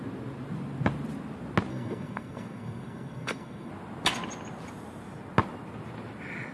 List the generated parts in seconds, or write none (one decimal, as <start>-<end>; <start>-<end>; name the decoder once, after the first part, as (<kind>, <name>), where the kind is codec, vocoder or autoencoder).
1.7-3.7 (codec, SNAC)

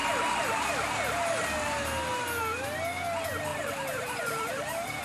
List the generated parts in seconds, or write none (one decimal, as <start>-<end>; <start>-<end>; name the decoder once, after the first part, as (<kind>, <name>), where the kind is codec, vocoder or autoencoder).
3.5-5.0 (vocoder, BigVGAN v2)

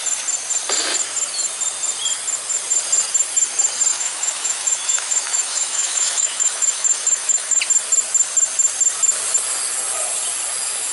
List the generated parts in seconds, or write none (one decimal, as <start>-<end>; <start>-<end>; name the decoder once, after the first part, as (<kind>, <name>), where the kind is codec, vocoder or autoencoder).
3.9-7.6 (autoencoder, DAC-VAE)

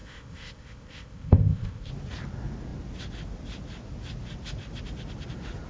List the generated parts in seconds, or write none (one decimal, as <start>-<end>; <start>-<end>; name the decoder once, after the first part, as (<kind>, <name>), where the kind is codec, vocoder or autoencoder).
0.0-1.9 (codec, ZipCodec)

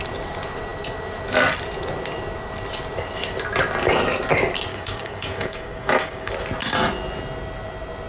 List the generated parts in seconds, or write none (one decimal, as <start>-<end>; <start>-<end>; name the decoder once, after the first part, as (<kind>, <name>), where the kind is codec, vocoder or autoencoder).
4.7-6.3 (codec, DAC)

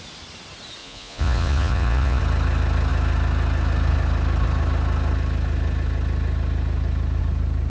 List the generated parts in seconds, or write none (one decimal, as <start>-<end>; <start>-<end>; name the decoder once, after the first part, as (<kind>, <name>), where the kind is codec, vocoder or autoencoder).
0.8-2.2 (vocoder, Vocos)

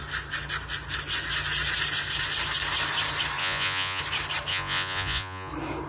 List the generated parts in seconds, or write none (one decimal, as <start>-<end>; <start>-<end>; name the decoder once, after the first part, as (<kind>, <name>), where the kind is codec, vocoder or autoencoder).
3.4-4.0 (vocoder, Vocos); 4.5-5.5